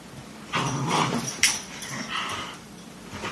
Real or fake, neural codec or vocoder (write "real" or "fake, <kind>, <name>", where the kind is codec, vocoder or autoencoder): fake, vocoder, BigVGAN v2